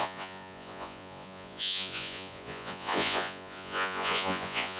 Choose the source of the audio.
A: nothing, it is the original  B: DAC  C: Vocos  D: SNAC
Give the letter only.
C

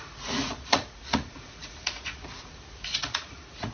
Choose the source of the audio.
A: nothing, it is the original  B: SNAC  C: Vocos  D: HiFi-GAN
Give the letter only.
C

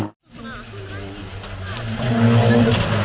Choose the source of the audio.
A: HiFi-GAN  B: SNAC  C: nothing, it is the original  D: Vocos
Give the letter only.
C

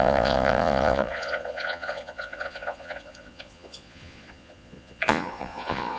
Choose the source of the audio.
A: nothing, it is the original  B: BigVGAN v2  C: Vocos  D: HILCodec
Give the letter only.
C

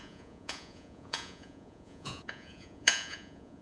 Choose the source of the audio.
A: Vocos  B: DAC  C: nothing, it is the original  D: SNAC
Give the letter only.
A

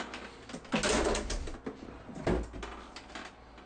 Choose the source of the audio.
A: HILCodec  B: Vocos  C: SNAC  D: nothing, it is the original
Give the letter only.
D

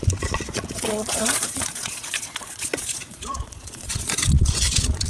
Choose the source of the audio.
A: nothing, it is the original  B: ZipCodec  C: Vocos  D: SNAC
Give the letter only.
C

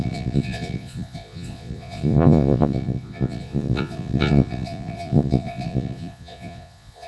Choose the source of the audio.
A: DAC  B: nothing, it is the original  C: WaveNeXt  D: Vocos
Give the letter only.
D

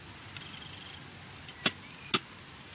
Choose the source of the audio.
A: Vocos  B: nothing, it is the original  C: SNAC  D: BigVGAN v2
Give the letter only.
B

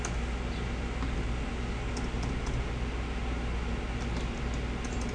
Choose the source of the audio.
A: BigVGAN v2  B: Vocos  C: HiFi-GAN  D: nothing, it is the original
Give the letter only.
D